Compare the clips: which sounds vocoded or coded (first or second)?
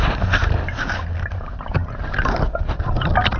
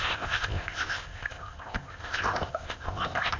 second